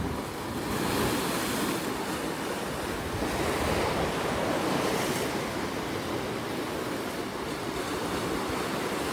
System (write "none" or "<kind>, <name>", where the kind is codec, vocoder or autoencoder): none